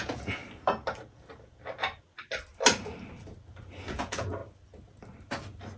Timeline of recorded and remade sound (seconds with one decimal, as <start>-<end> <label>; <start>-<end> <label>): 0.0-0.4 remade; 0.4-3.9 recorded; 3.9-4.4 remade; 4.4-5.8 recorded